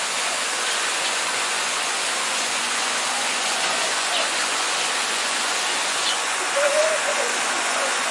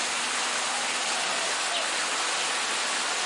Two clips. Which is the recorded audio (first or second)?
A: second